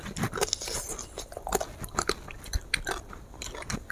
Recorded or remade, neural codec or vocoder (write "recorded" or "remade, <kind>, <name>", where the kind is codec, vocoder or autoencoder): recorded